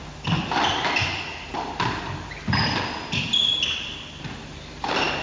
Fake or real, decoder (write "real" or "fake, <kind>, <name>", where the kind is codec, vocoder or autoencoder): real